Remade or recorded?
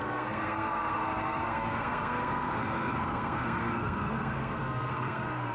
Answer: remade